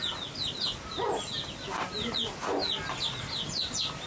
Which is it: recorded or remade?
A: recorded